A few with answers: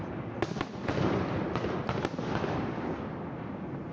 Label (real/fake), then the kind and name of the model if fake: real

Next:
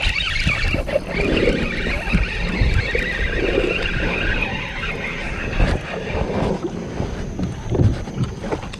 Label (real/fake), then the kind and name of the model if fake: real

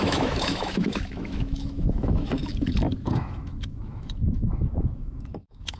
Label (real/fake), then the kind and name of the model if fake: fake, autoencoder, DAC-VAE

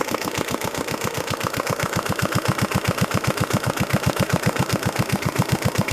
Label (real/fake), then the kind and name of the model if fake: fake, autoencoder, DAC-VAE